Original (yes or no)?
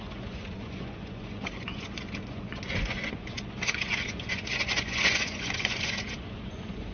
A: no